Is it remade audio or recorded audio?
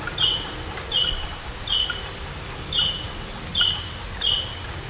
recorded